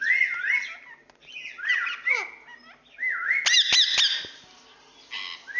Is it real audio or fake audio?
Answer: real